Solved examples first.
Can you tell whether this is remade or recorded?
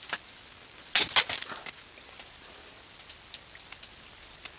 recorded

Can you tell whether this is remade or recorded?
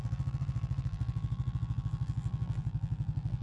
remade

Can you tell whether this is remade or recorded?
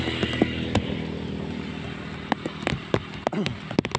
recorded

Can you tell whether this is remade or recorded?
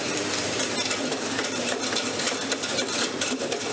remade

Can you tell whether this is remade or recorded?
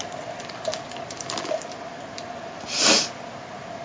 remade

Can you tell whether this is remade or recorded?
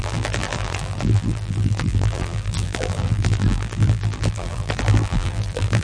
remade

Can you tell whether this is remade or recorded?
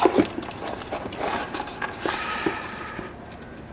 recorded